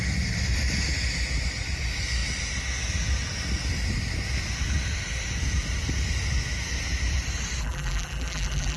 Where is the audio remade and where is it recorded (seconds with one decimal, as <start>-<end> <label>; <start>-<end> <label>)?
0.0-7.6 recorded; 7.6-8.8 remade